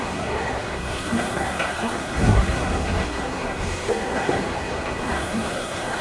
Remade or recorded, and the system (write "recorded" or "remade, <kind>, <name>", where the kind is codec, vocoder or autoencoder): remade, codec, SNAC